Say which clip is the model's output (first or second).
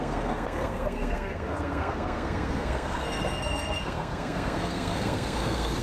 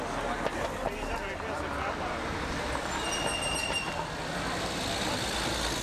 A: first